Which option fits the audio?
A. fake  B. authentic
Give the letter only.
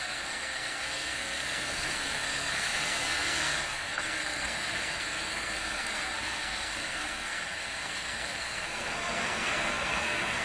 A